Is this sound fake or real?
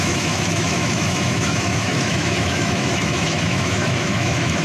fake